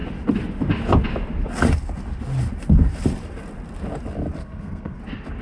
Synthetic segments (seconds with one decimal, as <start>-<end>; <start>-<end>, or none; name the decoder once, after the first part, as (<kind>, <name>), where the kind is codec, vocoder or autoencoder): 4.4-5.0 (codec, SNAC)

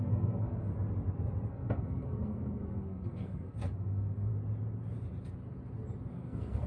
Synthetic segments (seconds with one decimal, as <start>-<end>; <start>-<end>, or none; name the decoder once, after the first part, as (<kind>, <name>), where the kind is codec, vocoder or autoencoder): 0.0-0.7 (codec, SNAC); 1.5-4.3; 6.1-6.7